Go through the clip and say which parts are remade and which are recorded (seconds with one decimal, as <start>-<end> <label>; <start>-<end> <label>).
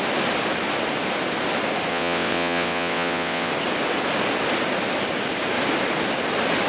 0.0-1.9 recorded; 1.9-3.5 remade; 3.5-6.7 recorded